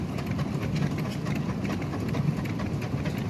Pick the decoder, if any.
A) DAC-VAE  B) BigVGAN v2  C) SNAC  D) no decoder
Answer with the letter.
D